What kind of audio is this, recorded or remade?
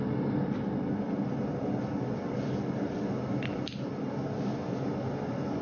recorded